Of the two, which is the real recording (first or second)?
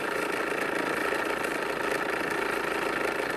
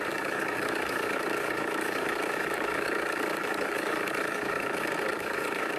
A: first